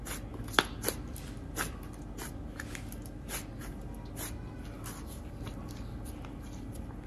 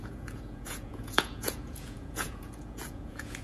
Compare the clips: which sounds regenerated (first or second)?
second